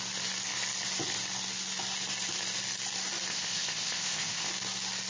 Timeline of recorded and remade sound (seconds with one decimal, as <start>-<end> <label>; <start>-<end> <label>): 0.0-3.3 recorded; 3.3-4.5 remade; 4.5-5.1 recorded